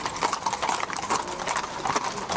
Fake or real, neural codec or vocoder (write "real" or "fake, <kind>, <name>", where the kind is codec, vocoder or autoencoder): real